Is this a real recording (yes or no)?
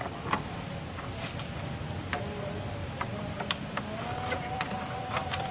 yes